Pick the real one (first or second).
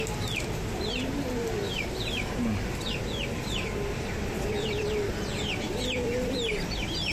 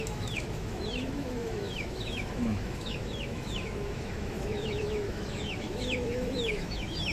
first